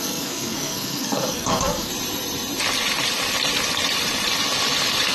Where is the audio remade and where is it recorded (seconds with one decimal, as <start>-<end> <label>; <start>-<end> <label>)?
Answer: 0.0-1.9 remade; 1.9-5.1 recorded

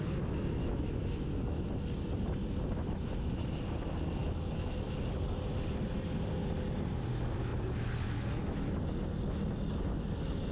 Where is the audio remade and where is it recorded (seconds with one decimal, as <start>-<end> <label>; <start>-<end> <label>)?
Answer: 0.0-0.6 recorded; 0.6-1.6 remade; 1.6-4.2 recorded; 4.2-4.7 remade; 4.7-10.5 recorded

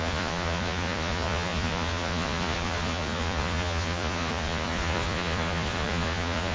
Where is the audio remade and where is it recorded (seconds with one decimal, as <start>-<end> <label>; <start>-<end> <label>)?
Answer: 0.0-6.5 remade

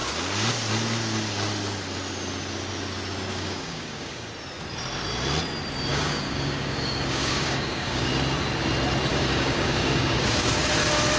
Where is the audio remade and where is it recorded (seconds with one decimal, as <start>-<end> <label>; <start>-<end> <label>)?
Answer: 0.0-3.3 recorded; 3.3-4.3 remade; 4.3-5.9 recorded; 5.9-8.1 remade; 8.1-9.1 recorded; 9.1-10.7 remade; 10.7-11.2 recorded

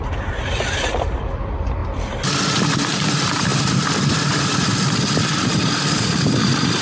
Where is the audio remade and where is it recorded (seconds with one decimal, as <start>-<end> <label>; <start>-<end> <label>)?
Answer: 0.0-1.8 remade; 1.8-2.3 recorded; 2.3-6.8 remade

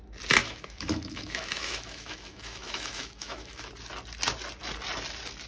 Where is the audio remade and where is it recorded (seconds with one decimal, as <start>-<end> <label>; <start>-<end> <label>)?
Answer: 0.0-0.4 recorded; 0.4-3.7 remade; 3.7-5.5 recorded